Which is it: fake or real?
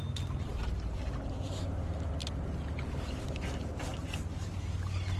real